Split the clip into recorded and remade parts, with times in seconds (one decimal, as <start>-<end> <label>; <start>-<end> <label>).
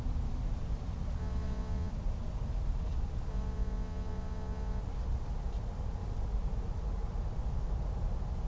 0.0-1.2 recorded; 1.2-1.9 remade; 1.9-3.3 recorded; 3.3-4.8 remade; 4.8-8.5 recorded